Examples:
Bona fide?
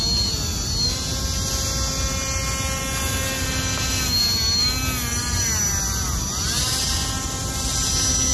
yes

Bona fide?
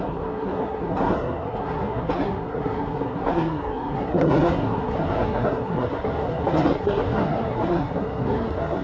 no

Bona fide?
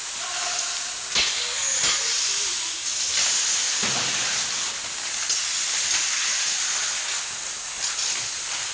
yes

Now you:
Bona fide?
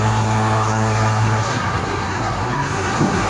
no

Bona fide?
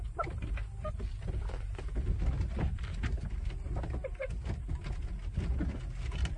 yes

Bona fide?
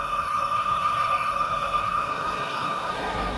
no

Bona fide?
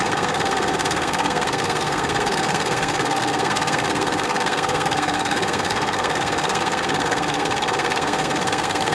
no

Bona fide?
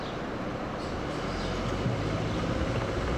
yes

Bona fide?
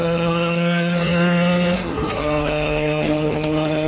no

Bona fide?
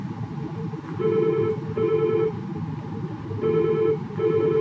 yes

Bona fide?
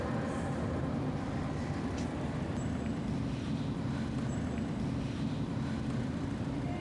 yes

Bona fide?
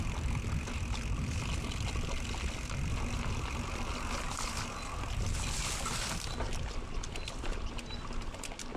yes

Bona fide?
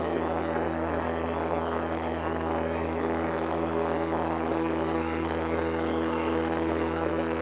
no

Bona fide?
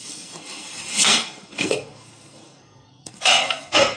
no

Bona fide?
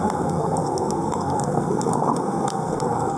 no